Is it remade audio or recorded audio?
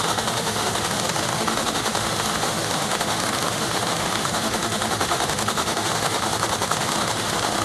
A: remade